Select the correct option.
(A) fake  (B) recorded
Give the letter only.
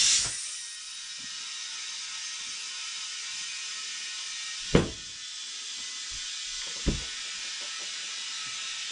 B